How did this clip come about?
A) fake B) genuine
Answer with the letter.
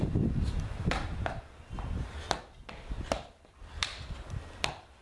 A